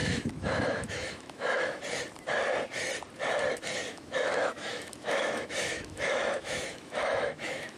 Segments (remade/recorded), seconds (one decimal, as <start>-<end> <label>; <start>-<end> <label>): 0.0-1.8 remade; 1.8-3.9 recorded; 3.9-7.8 remade